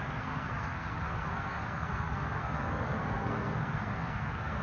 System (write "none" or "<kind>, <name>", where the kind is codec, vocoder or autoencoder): codec, SNAC